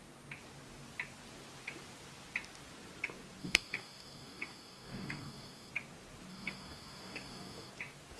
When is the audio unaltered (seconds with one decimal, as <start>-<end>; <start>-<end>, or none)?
0.0-3.4; 5.7-6.3; 7.7-8.2

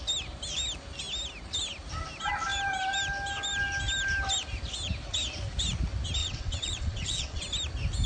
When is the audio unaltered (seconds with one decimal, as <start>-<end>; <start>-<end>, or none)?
0.0-6.2; 7.4-8.1

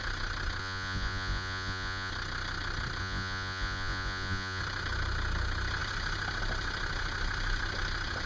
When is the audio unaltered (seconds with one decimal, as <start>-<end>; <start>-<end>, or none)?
0.0-0.6; 2.1-3.0; 4.6-8.3

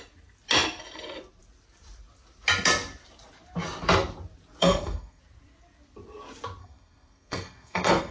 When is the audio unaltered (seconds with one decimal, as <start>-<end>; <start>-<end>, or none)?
0.0-4.6; 5.2-6.6

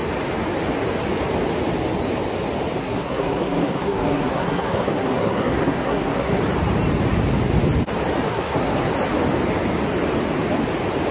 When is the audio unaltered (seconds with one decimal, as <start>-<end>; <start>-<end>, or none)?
0.0-2.8; 6.4-8.3; 8.9-11.1

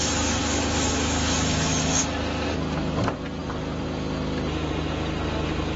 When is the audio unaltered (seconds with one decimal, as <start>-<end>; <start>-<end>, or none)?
0.0-0.4; 2.0-5.8